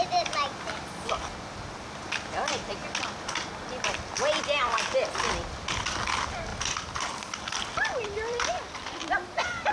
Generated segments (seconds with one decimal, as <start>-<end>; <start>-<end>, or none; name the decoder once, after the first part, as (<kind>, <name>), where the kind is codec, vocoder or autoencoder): 6.5-9.7 (vocoder, BigVGAN v2)